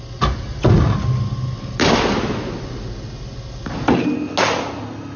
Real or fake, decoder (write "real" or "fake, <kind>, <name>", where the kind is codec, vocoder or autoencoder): real